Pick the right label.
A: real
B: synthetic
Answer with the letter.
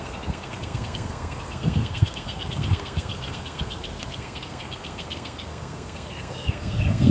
B